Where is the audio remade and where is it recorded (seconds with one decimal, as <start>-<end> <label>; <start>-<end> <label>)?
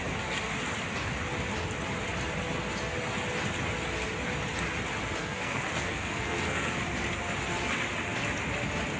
0.0-5.2 recorded; 5.2-6.8 remade; 6.8-9.0 recorded